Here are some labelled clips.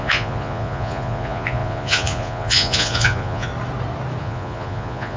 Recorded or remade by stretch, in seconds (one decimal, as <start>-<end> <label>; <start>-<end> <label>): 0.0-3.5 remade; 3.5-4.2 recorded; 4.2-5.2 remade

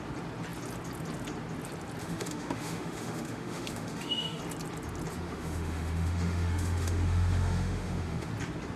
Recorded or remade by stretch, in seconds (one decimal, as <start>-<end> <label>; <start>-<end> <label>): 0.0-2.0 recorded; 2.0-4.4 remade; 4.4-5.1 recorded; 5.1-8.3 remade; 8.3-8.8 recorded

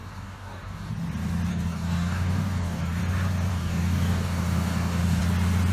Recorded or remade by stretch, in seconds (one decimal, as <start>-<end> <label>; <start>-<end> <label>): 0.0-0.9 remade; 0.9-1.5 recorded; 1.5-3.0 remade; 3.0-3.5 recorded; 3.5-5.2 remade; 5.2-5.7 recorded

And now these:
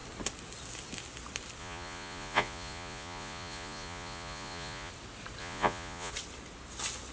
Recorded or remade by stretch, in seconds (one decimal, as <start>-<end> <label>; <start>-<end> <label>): 0.0-1.6 recorded; 1.6-4.9 remade; 4.9-5.4 recorded; 5.4-6.1 remade; 6.1-7.1 recorded